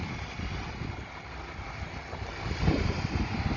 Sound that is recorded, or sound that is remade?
recorded